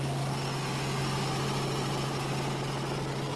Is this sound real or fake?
real